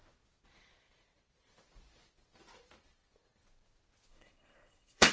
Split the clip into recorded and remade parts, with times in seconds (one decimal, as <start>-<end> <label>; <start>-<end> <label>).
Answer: 0.0-4.1 recorded; 4.1-5.1 remade